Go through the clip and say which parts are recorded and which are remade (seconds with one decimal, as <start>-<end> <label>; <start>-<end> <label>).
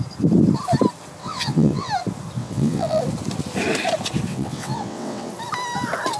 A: 0.0-1.2 recorded; 1.2-1.9 remade; 1.9-2.4 recorded; 2.4-3.0 remade; 3.0-4.3 recorded; 4.3-5.3 remade; 5.3-6.2 recorded